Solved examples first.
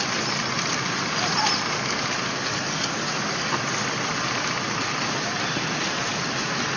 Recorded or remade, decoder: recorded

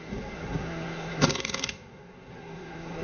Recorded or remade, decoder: remade, codec, SNAC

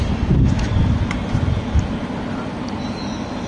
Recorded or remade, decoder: recorded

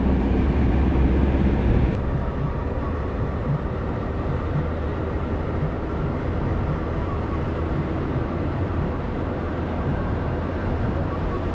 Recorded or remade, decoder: remade, vocoder, BigVGAN v2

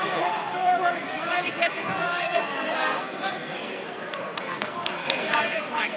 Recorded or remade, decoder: remade, codec, SNAC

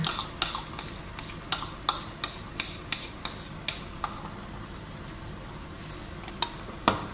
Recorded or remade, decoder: recorded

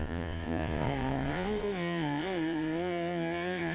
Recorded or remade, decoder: remade, vocoder, Vocos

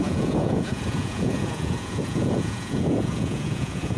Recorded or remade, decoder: remade, vocoder, Vocos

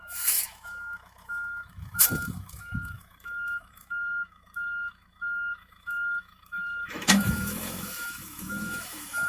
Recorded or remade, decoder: remade, autoencoder, DAC-VAE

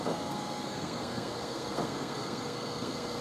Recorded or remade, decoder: remade, codec, SNAC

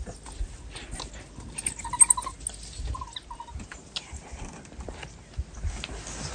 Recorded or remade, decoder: recorded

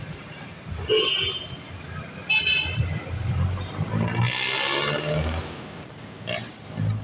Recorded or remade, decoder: recorded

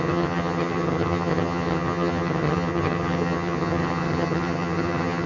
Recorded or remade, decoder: remade, vocoder, HiFi-GAN